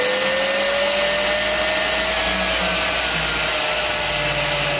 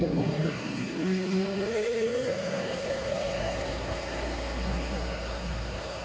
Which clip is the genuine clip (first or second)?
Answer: first